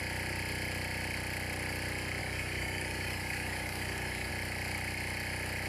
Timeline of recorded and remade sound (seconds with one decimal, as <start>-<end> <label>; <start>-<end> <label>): 0.0-2.2 recorded; 2.2-4.3 remade; 4.3-5.7 recorded